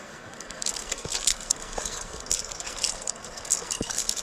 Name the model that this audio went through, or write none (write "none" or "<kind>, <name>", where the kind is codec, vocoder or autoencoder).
codec, SNAC